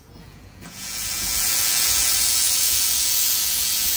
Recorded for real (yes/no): no